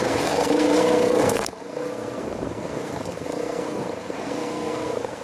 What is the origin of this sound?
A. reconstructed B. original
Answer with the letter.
A